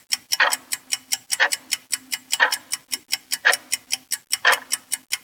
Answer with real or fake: real